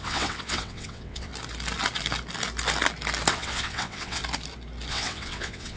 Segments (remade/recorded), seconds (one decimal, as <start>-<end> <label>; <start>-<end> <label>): 0.0-1.3 remade; 1.3-3.3 recorded; 3.3-4.2 remade; 4.2-4.9 recorded; 4.9-5.8 remade